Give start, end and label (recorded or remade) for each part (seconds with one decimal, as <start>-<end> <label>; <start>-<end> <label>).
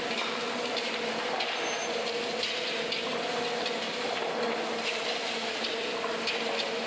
0.0-6.9 recorded